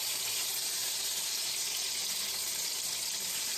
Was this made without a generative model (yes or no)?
no